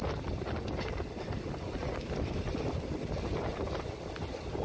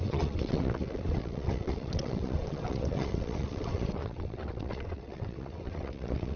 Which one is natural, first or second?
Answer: first